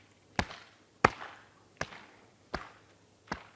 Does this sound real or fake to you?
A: real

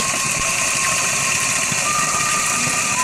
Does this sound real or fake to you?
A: real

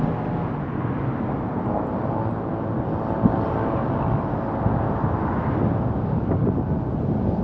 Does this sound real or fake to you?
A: real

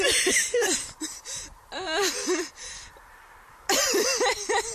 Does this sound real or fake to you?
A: fake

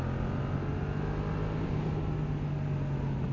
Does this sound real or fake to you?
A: real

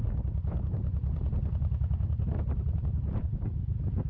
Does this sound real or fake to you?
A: fake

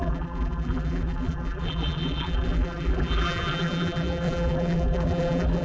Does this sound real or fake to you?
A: fake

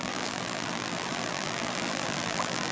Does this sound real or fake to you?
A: fake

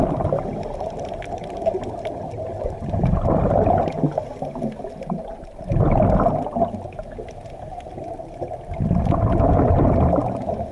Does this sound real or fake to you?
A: real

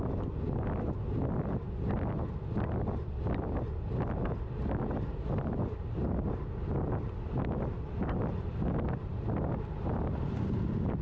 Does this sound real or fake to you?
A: real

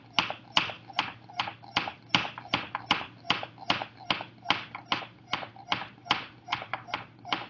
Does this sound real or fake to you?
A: real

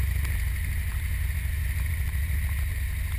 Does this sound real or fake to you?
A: real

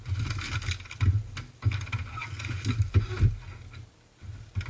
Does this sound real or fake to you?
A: real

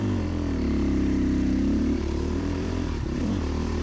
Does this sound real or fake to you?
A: fake